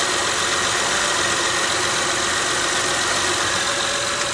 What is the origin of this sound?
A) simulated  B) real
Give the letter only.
B